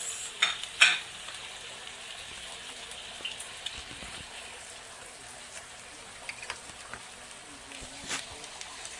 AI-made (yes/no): no